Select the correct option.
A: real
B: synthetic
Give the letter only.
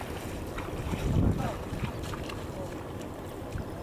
A